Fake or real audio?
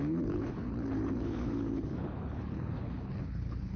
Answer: fake